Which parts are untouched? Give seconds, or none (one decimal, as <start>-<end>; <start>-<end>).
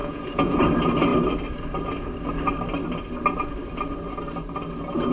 0.6-5.1